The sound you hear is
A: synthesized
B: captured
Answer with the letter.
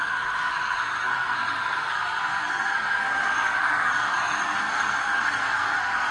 A